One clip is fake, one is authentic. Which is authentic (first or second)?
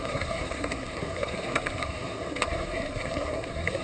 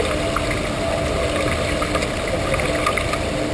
second